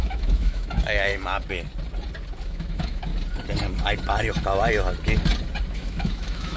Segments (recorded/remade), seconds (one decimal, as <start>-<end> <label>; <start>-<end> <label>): 0.0-1.1 remade; 1.1-2.4 recorded; 2.4-3.1 remade; 3.1-5.7 recorded; 5.7-6.6 remade